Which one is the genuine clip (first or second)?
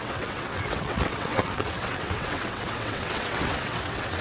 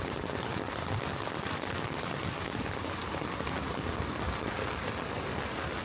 second